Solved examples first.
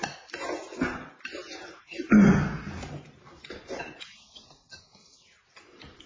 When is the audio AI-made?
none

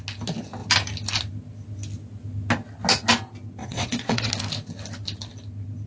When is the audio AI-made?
3.6-4.3 (vocoder, WaveNeXt)

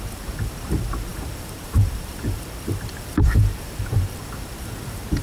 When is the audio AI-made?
1.1-4.2 (vocoder, BigVGAN v2)

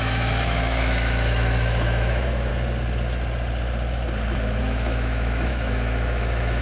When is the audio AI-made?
0.0-2.5 (autoencoder, DAC-VAE); 4.6-6.6